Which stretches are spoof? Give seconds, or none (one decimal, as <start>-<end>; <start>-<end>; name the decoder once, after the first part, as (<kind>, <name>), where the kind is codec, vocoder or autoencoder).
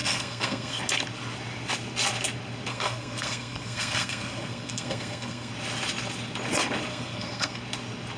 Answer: 0.0-0.8 (codec, SNAC); 2.7-5.5; 6.9-7.6